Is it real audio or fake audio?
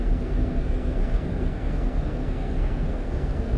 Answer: fake